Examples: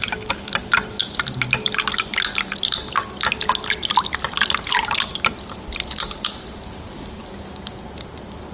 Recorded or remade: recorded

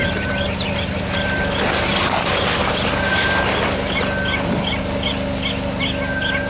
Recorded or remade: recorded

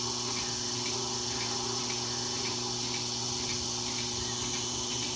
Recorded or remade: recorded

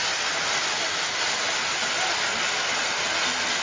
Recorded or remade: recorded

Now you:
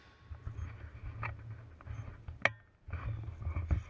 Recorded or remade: recorded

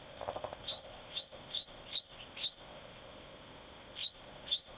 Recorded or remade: remade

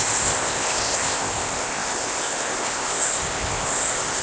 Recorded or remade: remade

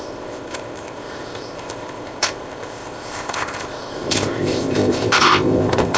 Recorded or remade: remade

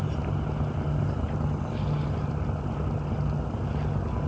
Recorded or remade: recorded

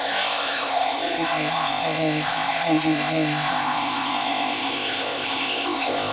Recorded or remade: remade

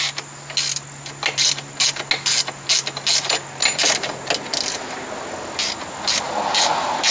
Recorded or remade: recorded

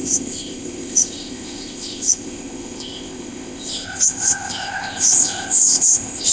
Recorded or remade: remade